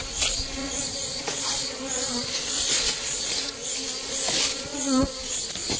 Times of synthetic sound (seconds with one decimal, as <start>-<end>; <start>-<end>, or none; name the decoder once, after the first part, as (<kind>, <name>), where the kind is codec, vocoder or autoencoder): 0.6-3.7 (vocoder, Vocos); 4.5-5.1